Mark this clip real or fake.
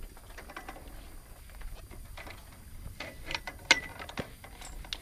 real